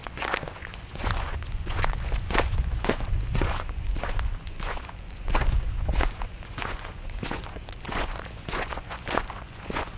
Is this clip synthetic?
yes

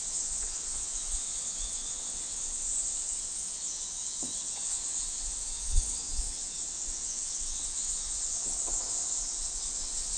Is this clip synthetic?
yes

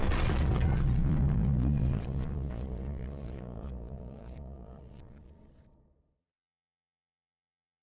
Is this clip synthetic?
yes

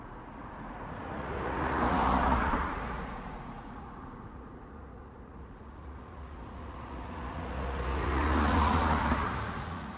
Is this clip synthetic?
yes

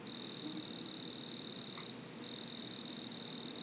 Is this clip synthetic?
no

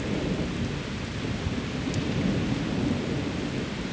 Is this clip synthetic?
no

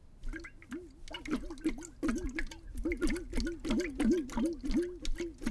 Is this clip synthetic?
no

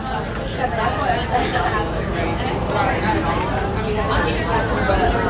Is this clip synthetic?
no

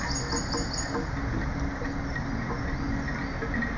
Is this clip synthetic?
no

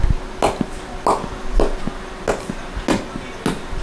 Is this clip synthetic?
no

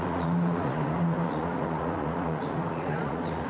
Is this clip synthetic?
yes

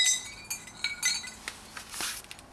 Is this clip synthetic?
no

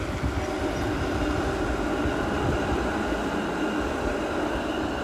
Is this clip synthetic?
no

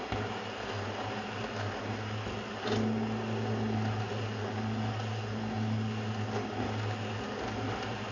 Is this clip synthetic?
no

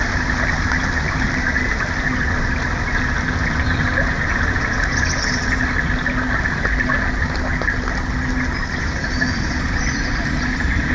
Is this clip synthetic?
no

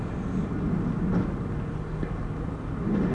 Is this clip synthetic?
no